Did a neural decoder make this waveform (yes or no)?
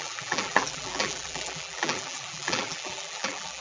yes